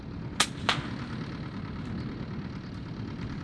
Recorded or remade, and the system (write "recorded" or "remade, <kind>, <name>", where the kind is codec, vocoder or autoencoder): recorded